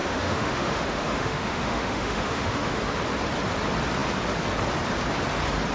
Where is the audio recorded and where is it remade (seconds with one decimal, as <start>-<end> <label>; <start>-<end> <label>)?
0.0-2.8 remade; 2.8-5.7 recorded